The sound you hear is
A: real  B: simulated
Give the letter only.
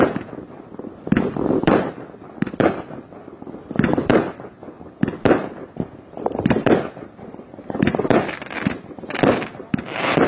B